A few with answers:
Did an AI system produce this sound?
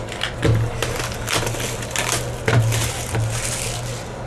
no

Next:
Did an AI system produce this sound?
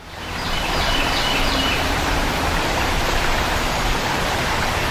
yes